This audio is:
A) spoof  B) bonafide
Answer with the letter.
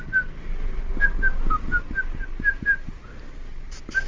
B